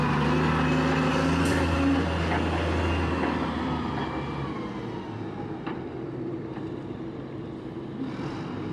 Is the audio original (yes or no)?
yes